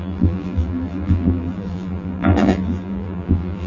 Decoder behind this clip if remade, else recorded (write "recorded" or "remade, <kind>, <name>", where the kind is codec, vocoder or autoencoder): remade, vocoder, BigVGAN v2